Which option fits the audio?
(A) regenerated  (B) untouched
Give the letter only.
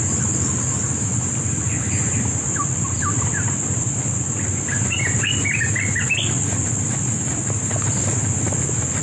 B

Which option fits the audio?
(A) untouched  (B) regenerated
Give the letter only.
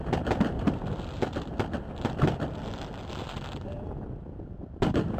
A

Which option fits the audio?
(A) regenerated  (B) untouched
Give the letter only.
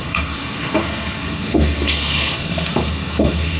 A